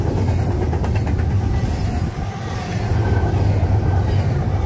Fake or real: real